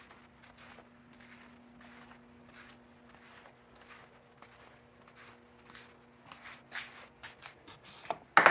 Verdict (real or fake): real